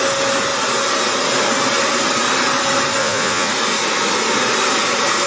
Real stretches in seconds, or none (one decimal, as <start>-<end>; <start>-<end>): 0.0-3.0; 3.5-5.3